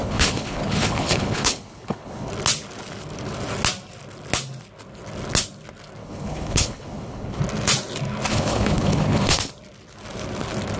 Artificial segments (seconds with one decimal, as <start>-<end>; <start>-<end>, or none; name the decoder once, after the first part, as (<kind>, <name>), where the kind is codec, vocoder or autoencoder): 0.0-2.3 (codec, HILCodec); 6.0-7.4; 8.3-9.5